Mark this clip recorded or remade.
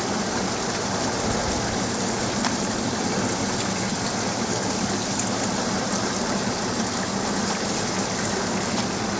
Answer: recorded